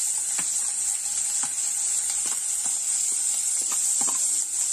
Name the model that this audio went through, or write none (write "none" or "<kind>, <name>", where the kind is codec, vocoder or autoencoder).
none